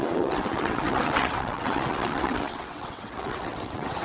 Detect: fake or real fake